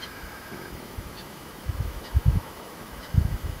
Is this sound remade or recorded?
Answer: remade